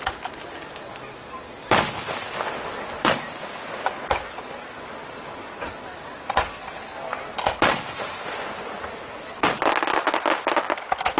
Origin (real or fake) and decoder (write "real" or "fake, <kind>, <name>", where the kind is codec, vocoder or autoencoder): real